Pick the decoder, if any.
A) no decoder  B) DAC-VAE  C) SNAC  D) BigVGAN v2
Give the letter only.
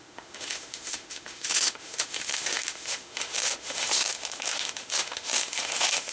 B